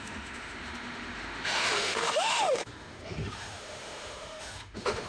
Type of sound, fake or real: fake